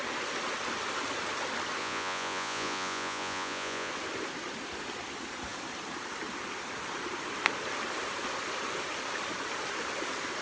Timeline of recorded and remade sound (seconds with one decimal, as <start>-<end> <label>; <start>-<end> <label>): 0.0-1.8 recorded; 1.8-3.9 remade; 3.9-10.4 recorded